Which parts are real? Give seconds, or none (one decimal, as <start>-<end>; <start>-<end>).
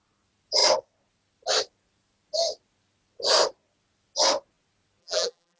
0.0-5.0